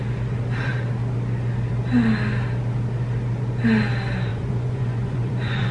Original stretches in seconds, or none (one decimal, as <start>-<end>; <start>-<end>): 0.0-4.3